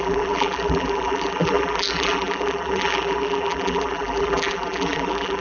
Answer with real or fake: fake